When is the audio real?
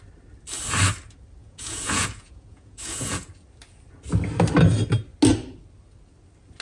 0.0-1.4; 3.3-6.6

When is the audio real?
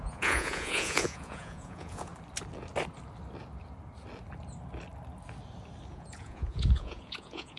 2.1-5.9